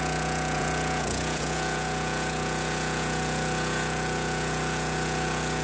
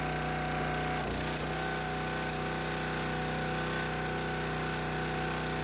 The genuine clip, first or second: second